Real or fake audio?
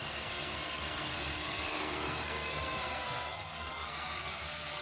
fake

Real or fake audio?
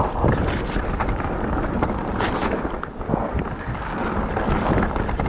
real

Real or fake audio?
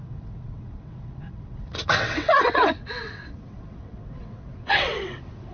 fake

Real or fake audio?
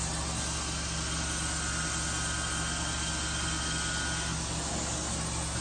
real